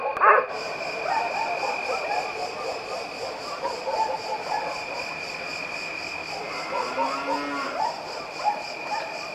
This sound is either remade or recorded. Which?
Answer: recorded